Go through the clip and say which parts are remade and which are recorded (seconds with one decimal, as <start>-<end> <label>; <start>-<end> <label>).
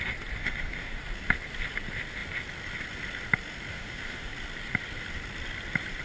0.0-0.4 recorded; 0.4-1.0 remade; 1.0-3.7 recorded; 3.7-4.3 remade; 4.3-6.0 recorded